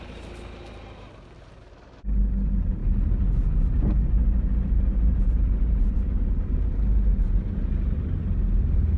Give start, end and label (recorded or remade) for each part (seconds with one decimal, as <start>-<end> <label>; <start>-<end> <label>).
0.0-9.0 recorded